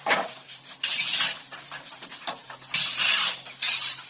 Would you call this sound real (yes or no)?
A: yes